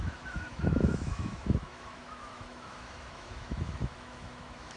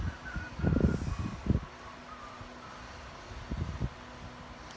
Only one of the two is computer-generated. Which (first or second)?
first